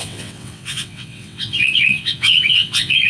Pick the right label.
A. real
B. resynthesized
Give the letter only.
B